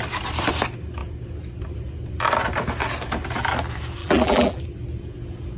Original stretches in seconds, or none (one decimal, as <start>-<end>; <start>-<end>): 0.0-4.0; 4.6-5.6